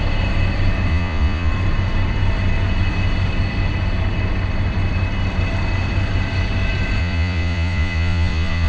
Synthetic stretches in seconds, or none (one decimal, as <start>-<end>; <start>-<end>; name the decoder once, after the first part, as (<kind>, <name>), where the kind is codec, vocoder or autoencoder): 0.9-1.5 (vocoder, Vocos); 7.0-8.7